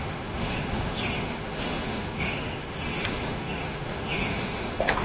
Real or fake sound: fake